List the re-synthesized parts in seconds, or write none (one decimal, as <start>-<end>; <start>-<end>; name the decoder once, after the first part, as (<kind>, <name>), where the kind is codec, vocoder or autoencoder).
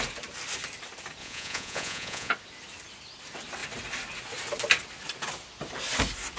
1.2-2.3 (vocoder, Vocos)